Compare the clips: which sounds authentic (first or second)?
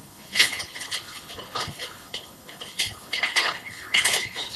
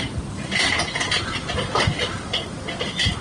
second